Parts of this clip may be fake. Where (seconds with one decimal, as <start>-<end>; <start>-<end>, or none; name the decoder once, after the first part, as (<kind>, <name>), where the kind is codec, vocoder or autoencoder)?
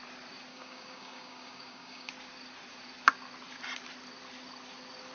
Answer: 0.5-2.1 (codec, DAC)